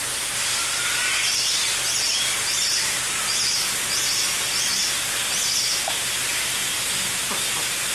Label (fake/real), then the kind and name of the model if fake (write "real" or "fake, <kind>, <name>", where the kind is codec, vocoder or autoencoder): real